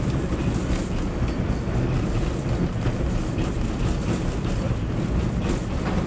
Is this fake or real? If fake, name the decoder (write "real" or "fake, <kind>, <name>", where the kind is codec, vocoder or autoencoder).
real